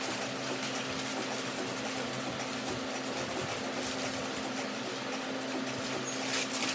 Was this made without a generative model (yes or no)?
yes